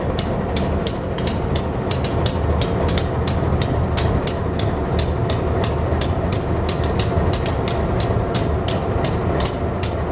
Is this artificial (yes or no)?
no